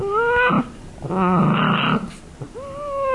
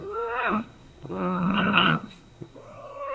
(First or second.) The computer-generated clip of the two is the second